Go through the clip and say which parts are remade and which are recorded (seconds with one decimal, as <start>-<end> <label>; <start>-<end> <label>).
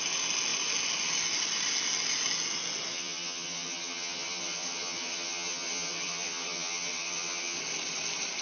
0.0-2.9 recorded; 2.9-7.6 remade; 7.6-8.4 recorded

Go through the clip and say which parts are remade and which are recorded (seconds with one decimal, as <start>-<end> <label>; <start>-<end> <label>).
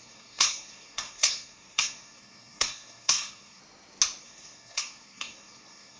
0.0-3.6 remade; 3.6-4.2 recorded; 4.2-6.0 remade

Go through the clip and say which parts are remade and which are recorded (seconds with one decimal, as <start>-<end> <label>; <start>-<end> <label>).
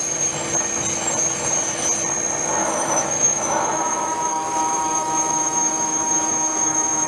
0.0-2.6 recorded; 2.6-7.1 remade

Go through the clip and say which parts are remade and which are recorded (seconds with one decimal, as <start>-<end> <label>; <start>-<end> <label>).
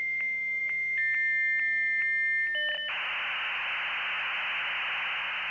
0.0-5.5 recorded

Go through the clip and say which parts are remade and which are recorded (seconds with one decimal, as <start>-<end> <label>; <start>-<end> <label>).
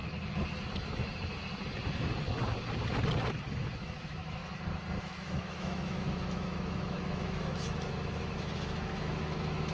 0.0-3.7 recorded; 3.7-4.4 remade; 4.4-5.0 recorded; 5.0-9.7 remade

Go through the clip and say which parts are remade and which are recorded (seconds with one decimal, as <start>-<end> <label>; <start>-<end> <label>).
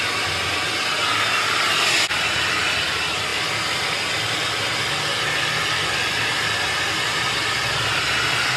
0.0-8.6 recorded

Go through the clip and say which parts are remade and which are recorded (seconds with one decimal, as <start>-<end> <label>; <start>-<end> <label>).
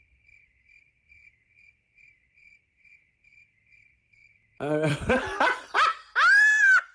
0.0-6.9 remade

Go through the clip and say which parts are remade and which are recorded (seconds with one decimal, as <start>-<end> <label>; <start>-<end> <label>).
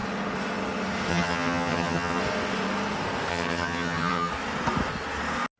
0.0-1.1 recorded; 1.1-2.2 remade; 2.2-3.3 recorded; 3.3-4.3 remade; 4.3-5.6 recorded